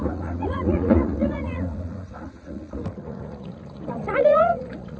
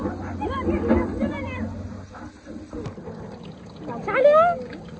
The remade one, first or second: first